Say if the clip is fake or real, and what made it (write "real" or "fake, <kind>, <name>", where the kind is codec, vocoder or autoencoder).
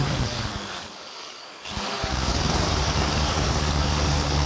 fake, codec, DAC